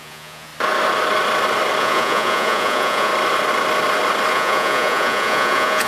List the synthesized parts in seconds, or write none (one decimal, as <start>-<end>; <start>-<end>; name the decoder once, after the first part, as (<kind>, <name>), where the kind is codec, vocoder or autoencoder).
0.0-0.5 (vocoder, Vocos); 1.8-3.1; 4.3-5.9